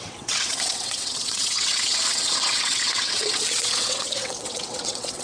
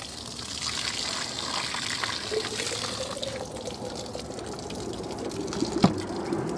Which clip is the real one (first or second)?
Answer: second